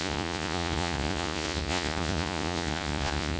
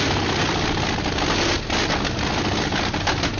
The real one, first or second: second